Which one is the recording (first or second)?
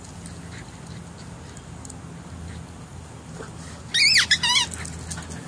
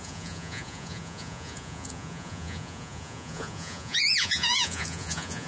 first